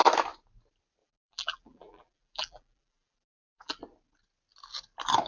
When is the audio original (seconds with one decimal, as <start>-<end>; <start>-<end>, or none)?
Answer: 0.0-1.0; 3.8-5.3